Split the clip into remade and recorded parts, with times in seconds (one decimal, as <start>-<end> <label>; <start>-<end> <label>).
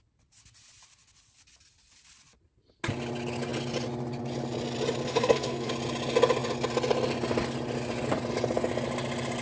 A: 0.0-5.1 recorded; 5.1-5.7 remade; 5.7-9.4 recorded